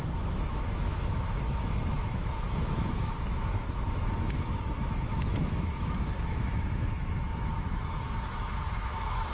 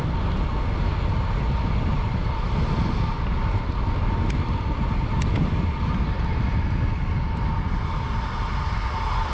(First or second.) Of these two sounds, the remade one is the first